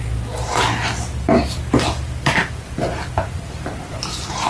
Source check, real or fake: real